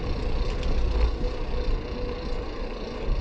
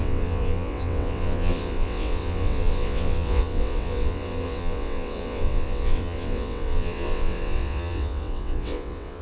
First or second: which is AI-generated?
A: second